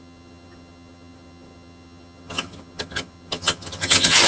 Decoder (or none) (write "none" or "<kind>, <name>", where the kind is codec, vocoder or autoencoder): vocoder, HiFi-GAN